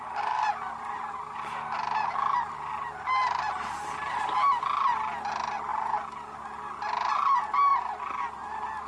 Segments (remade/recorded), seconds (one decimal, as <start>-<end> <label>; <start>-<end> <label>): 0.0-8.9 recorded

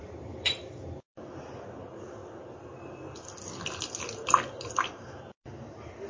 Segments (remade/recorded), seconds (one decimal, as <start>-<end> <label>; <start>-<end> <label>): 0.0-1.4 remade; 1.4-6.1 recorded

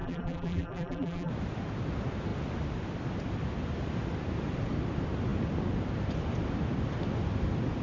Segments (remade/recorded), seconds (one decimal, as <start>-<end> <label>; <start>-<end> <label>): 0.0-1.3 remade; 1.3-7.8 recorded